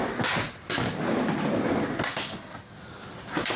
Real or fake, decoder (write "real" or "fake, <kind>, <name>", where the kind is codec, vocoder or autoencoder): real